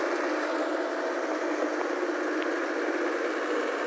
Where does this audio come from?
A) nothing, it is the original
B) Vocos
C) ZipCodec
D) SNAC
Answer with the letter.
A